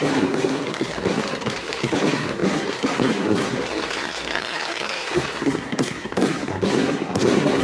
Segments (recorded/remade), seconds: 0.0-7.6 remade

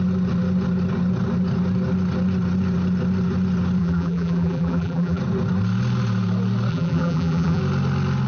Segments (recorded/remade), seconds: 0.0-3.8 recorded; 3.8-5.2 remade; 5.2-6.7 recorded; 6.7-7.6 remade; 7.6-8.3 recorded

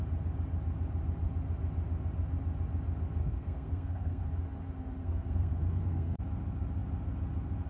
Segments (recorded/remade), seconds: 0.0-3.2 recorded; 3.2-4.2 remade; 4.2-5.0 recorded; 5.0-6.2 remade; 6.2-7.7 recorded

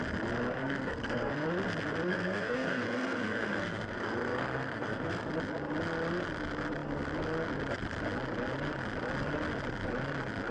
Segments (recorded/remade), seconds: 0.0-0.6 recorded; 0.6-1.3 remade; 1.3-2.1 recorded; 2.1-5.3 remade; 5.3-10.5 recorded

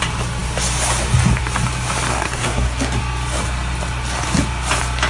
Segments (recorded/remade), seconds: 0.0-2.1 recorded; 2.1-2.9 remade; 2.9-5.1 recorded

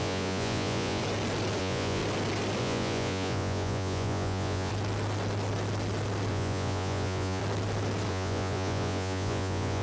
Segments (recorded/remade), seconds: 0.0-1.0 remade; 1.0-1.6 recorded; 1.6-2.0 remade; 2.0-2.6 recorded; 2.6-4.7 remade; 4.7-6.3 recorded; 6.3-7.4 remade; 7.4-8.1 recorded; 8.1-9.8 remade

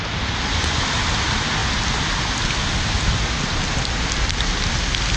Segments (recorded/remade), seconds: 0.0-5.2 recorded

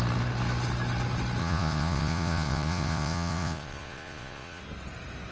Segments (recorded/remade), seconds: 0.0-1.4 recorded; 1.4-4.6 remade; 4.6-5.3 recorded